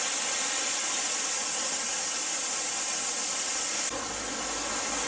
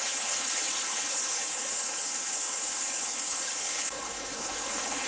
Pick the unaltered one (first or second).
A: first